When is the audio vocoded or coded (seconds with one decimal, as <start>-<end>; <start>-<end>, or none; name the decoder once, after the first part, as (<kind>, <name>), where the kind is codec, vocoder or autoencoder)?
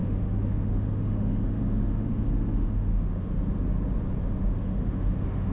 0.0-3.3 (autoencoder, DAC-VAE); 4.2-5.5